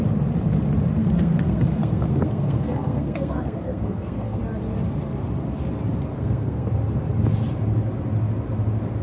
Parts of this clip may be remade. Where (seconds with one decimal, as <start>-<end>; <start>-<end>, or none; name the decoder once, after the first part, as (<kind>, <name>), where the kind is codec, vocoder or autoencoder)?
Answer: 1.0-4.4 (codec, SNAC); 6.1-6.7